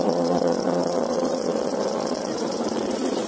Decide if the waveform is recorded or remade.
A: remade